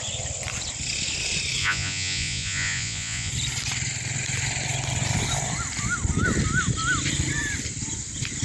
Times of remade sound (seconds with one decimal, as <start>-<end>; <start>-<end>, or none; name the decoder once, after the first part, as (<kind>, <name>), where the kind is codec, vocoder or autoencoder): 1.6-3.3 (vocoder, Vocos)